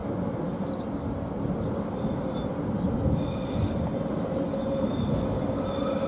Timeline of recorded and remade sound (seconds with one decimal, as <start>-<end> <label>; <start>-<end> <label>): 0.0-6.1 recorded